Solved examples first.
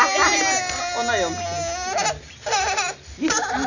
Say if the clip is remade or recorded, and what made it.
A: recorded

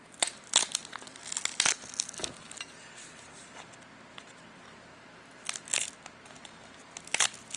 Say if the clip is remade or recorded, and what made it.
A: recorded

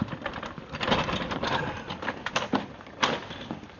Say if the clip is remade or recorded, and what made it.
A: recorded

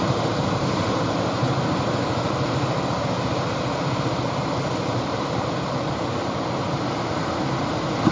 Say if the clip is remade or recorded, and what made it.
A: recorded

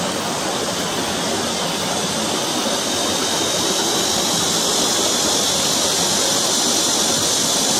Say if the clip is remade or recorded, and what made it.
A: recorded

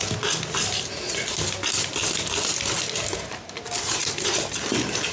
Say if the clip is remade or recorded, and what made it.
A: recorded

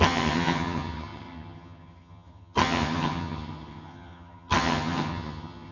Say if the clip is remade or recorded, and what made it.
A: remade, vocoder, HiFi-GAN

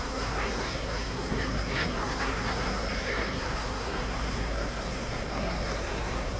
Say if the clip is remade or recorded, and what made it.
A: remade, codec, SNAC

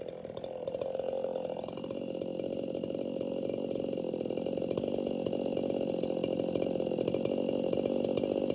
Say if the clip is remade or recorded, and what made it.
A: recorded